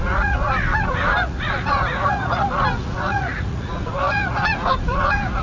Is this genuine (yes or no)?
no